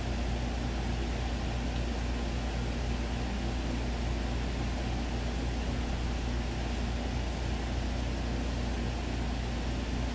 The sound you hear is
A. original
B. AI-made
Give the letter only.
A